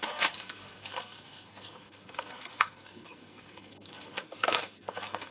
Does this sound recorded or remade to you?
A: remade